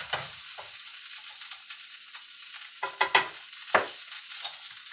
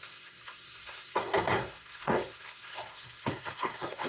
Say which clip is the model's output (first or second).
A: second